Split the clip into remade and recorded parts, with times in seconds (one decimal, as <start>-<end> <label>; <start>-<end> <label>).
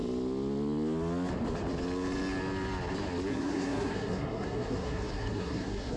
0.0-3.3 recorded; 3.3-6.0 remade